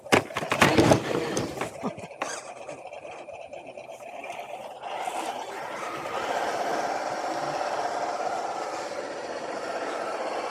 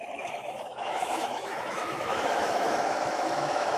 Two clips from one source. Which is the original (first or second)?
first